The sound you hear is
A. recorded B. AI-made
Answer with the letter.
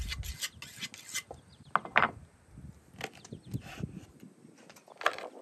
A